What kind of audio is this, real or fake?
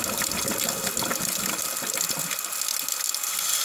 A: real